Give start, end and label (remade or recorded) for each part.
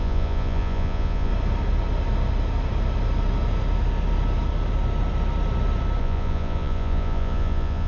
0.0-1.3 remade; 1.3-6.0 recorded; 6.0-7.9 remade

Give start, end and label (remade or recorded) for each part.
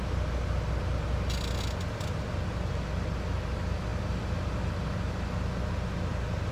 0.0-6.5 recorded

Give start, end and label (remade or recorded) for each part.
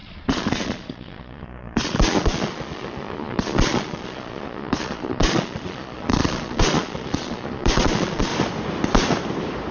0.0-8.3 remade; 8.3-9.7 recorded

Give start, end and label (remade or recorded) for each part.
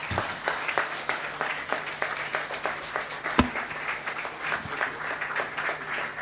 0.0-1.8 remade; 1.8-6.2 recorded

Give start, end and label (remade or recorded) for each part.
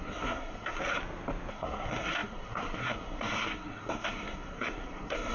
0.0-0.8 remade; 0.8-1.5 recorded; 1.5-5.3 remade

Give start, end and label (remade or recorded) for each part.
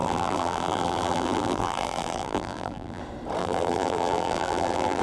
0.0-3.0 remade; 3.0-3.4 recorded; 3.4-5.0 remade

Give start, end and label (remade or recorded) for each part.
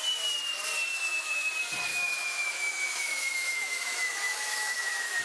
0.0-0.9 recorded; 0.9-1.5 remade; 1.5-1.9 recorded; 1.9-5.2 remade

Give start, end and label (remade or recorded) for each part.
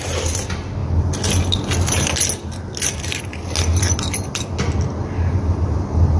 0.0-6.2 recorded